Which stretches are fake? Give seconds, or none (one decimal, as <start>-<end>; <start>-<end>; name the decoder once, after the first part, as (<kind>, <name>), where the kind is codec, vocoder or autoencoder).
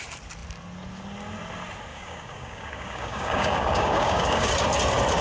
1.9-4.5 (codec, DAC)